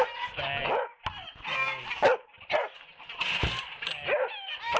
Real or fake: real